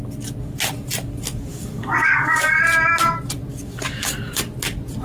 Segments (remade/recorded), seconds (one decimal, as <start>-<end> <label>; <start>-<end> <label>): 0.0-1.5 recorded; 1.5-2.6 remade; 2.6-3.5 recorded; 3.5-4.4 remade; 4.4-5.0 recorded